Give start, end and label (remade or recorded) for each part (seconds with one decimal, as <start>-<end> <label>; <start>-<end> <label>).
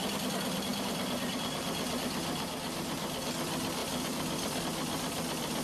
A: 0.0-5.6 recorded